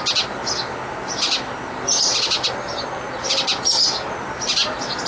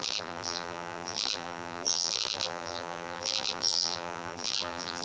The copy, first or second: second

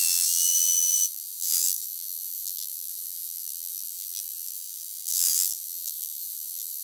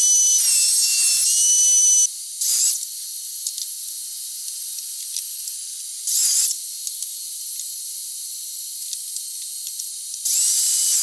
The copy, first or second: first